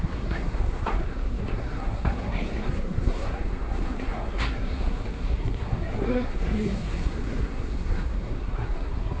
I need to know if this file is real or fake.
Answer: fake